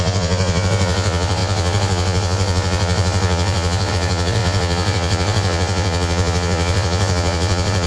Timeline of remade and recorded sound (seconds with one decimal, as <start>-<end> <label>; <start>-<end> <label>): 0.0-7.9 remade